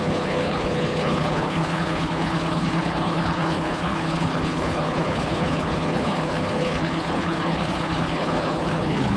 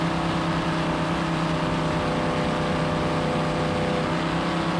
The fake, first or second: first